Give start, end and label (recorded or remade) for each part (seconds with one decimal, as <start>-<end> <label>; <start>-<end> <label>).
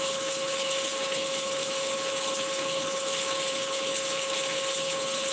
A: 0.0-5.3 remade